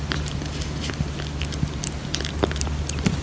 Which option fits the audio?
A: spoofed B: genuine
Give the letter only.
B